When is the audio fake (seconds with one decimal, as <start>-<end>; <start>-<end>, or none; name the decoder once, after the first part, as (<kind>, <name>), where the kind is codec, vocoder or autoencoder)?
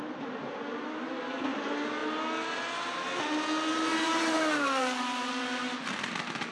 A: 3.9-5.3 (vocoder, BigVGAN v2)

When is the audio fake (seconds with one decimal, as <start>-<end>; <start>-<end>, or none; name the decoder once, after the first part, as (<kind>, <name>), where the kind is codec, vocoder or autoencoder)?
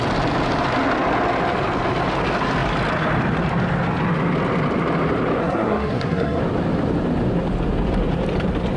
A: 5.4-6.4 (codec, SNAC)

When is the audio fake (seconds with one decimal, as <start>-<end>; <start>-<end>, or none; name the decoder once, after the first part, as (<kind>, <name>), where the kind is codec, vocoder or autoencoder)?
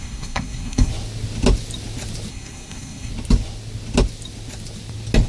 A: 0.0-0.9 (codec, SNAC); 2.3-3.1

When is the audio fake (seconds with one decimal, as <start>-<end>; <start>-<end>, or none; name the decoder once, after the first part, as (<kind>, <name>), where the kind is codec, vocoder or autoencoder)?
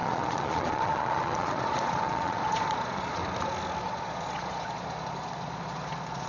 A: 0.0-3.2 (vocoder, Vocos); 3.8-6.3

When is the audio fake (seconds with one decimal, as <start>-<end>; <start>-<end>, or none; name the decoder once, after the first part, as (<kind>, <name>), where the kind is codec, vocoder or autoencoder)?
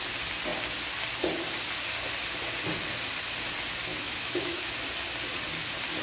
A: 3.9-4.7 (autoencoder, DAC-VAE)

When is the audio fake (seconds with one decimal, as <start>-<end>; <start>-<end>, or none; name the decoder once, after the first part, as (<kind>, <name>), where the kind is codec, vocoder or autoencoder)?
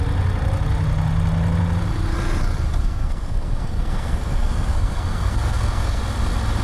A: 2.8-6.0 (codec, SNAC)